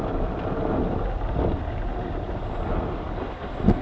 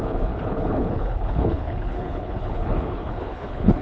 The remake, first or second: second